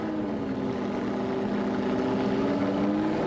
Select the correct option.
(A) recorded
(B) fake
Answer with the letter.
A